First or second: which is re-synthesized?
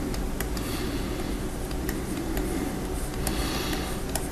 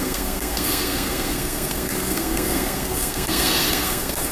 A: second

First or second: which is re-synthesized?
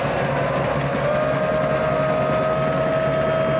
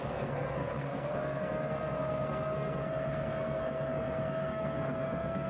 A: second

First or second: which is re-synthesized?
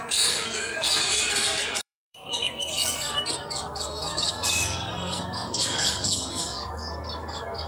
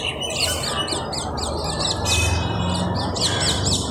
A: first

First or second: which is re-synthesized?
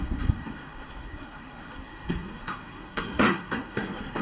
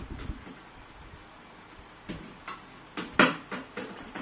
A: first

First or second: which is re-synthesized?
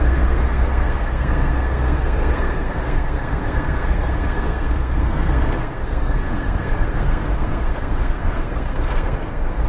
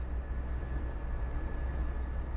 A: first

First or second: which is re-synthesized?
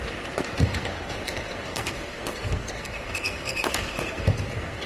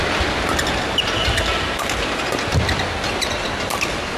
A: first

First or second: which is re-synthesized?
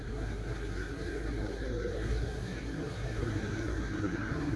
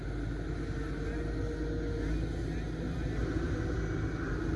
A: first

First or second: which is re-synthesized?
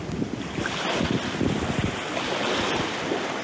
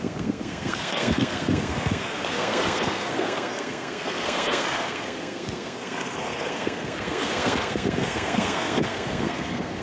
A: second